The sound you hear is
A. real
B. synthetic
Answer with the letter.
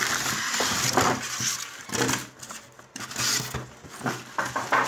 A